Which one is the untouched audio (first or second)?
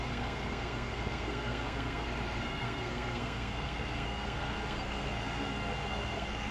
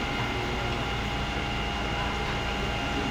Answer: second